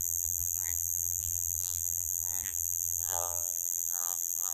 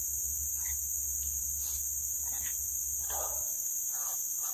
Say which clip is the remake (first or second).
first